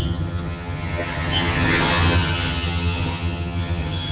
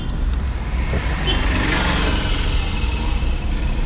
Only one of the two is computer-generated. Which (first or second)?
first